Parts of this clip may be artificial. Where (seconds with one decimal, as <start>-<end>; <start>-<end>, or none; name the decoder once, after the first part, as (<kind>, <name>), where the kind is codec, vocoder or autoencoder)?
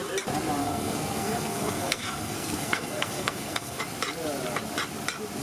0.6-3.8 (codec, SNAC)